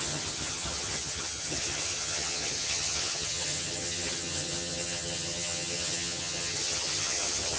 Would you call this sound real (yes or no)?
no